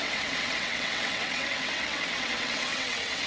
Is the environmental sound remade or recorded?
remade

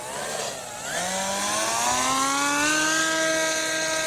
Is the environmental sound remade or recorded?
recorded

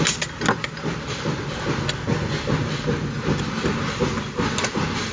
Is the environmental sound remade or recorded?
recorded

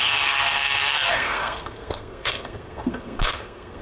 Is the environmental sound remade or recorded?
remade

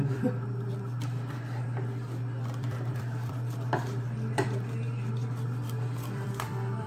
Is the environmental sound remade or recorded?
remade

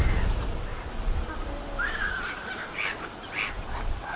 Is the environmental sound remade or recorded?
recorded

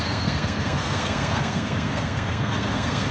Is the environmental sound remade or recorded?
remade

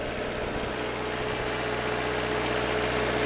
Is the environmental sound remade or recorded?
recorded